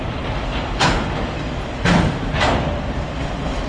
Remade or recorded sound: recorded